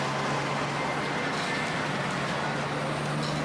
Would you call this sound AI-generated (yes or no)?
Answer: no